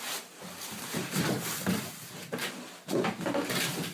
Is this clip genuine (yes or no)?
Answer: yes